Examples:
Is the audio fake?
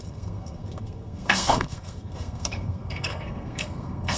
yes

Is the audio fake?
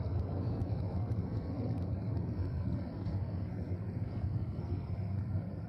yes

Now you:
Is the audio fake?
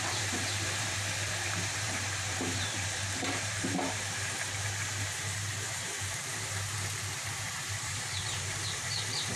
yes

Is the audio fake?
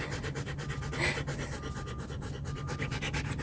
no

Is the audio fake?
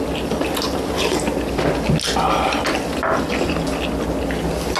no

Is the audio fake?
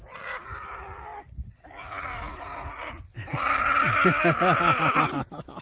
no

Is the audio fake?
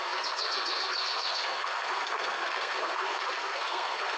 yes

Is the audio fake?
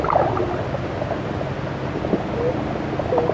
no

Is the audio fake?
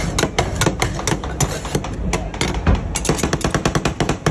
no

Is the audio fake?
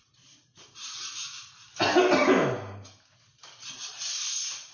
no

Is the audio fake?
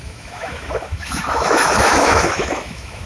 yes